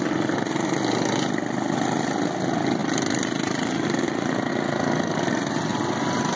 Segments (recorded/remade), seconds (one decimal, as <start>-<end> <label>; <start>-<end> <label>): 0.0-6.4 recorded